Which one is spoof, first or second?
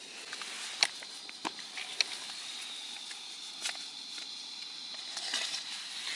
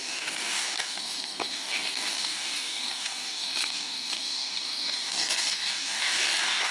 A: second